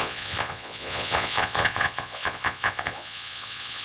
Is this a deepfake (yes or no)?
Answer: yes